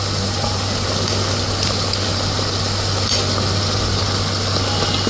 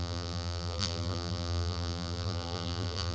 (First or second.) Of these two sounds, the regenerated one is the second